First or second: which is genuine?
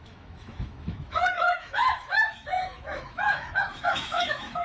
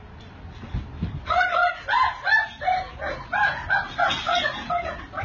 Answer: second